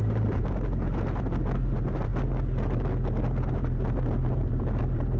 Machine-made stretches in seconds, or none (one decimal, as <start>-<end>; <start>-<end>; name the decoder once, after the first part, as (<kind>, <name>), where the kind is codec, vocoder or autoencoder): 0.0-2.1 (vocoder, BigVGAN v2); 3.5-5.2